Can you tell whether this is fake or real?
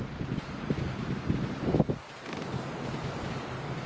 real